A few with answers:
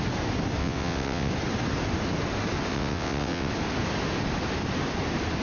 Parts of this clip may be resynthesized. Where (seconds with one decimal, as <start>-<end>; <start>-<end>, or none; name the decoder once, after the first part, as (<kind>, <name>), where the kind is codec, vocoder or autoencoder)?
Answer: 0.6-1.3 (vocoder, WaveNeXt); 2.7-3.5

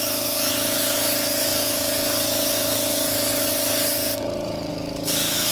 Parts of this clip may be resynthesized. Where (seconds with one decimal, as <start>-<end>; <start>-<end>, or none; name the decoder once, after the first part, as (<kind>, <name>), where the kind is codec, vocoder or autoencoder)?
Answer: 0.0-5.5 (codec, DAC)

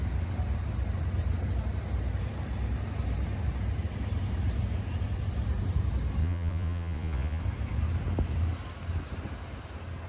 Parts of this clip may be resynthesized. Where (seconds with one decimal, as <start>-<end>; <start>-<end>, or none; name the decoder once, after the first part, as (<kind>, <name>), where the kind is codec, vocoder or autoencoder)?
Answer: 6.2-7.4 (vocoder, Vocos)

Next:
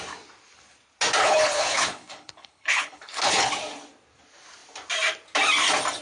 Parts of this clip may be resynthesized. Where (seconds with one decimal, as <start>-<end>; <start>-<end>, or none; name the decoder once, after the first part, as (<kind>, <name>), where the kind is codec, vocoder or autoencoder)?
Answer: 1.2-3.5 (codec, HILCodec)

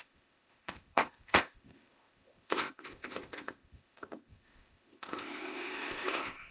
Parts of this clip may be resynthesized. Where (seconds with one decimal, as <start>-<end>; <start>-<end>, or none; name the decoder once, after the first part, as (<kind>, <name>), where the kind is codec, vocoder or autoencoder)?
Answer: 0.0-6.5 (codec, ZipCodec)

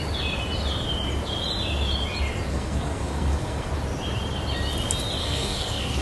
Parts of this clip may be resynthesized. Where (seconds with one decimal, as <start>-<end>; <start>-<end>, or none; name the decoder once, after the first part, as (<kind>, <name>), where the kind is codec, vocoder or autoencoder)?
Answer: 2.5-3.7 (codec, SNAC); 5.2-6.0

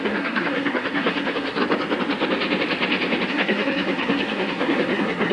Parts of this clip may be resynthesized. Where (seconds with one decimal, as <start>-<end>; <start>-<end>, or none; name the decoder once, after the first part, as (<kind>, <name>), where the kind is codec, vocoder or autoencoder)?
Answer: 0.0-1.6 (codec, SNAC); 3.3-5.3